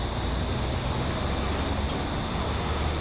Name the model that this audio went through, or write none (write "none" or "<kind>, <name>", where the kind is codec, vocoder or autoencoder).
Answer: none